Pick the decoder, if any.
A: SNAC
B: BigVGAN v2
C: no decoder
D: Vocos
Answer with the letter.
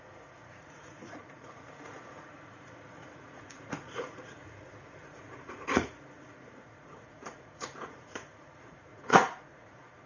D